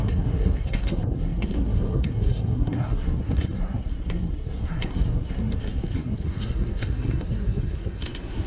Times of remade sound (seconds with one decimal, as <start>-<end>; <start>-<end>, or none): 0.0-8.5

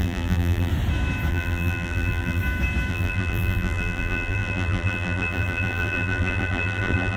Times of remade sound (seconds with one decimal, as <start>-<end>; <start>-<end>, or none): 0.0-0.7; 1.3-2.4; 2.9-7.2

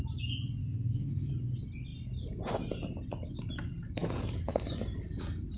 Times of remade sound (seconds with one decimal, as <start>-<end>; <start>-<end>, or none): 0.6-1.3

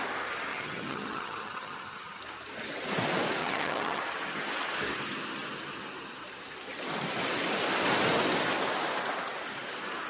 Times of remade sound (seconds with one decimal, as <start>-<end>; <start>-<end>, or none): 0.5-2.2; 3.4-4.0

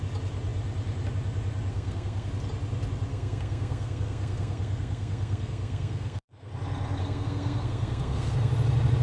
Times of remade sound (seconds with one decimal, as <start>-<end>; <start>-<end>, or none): 1.7-2.3; 3.1-6.5; 7.0-8.5